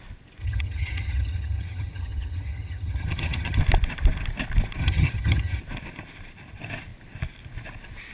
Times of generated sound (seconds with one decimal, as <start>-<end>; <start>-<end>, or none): 0.4-3.6; 4.8-5.6